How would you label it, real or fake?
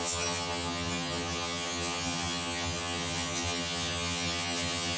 fake